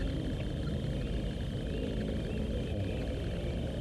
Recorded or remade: recorded